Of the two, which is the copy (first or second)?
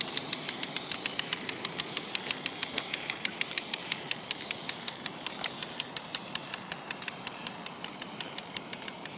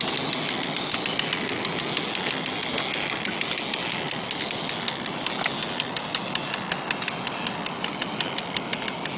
first